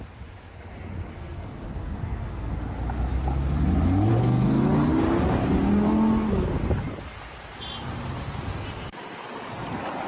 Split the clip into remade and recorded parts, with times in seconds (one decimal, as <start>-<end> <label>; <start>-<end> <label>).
0.0-1.1 recorded; 1.1-2.5 remade; 2.5-4.1 recorded; 4.1-4.6 remade; 4.6-10.1 recorded